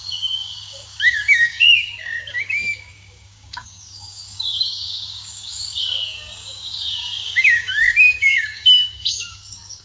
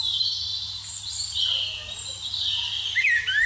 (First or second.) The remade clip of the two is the first